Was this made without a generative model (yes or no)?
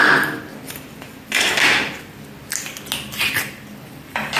yes